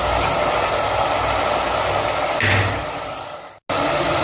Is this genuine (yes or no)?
yes